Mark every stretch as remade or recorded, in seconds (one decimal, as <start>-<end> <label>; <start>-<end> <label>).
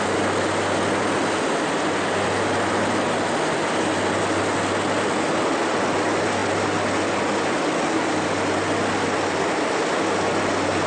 0.0-10.9 recorded